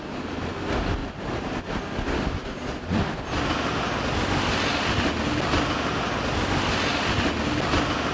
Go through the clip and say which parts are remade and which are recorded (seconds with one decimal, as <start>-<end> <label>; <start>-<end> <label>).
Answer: 0.0-1.0 recorded; 1.0-1.8 remade; 1.8-8.1 recorded